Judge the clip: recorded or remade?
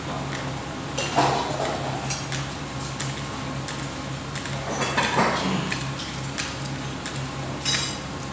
recorded